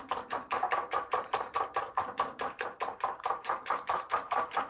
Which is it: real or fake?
fake